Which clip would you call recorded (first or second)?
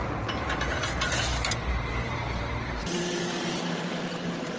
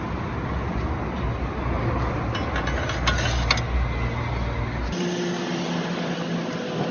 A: second